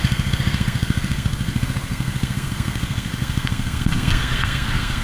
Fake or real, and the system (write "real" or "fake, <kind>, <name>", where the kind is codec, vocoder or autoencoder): fake, codec, SNAC